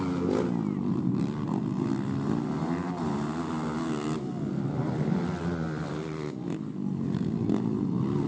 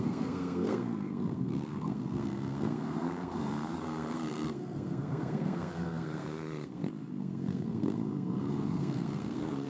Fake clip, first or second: second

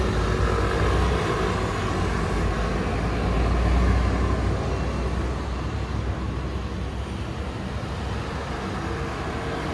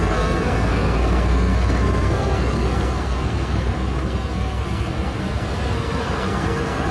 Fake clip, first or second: second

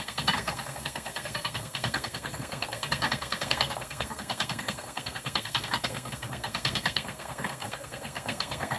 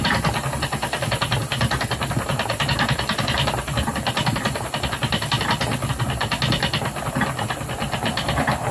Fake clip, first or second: first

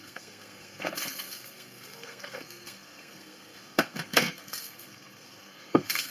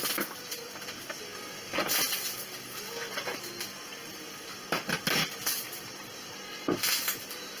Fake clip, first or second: first